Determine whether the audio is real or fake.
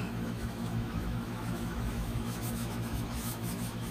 fake